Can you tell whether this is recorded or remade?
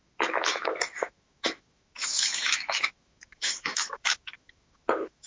remade